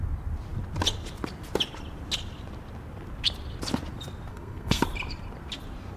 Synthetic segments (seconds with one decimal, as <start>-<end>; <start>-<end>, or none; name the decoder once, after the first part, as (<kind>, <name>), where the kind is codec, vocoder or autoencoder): 4.3-4.8 (codec, SNAC)